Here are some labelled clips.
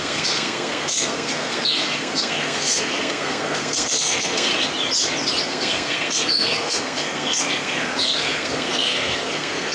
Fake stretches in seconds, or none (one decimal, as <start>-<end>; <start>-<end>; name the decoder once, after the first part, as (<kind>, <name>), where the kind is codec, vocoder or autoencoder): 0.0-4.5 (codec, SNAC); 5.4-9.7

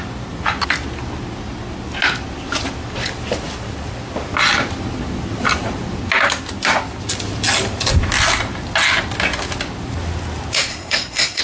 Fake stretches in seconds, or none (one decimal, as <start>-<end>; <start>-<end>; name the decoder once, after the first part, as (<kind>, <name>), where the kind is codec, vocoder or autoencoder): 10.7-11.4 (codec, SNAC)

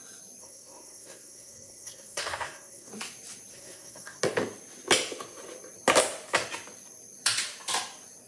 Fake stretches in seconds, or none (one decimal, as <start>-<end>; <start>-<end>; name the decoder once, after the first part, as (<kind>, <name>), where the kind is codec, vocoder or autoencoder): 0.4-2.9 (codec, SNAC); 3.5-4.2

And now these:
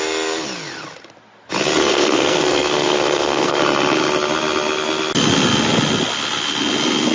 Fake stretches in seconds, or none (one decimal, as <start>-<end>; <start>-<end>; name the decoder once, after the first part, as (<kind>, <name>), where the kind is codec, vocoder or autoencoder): 1.9-3.6 (codec, SNAC)

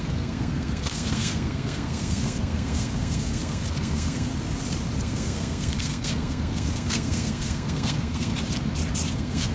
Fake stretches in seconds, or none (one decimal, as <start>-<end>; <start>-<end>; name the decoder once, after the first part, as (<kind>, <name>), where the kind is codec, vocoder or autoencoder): 0.0-4.3 (codec, SNAC); 5.0-8.3; 9.1-9.5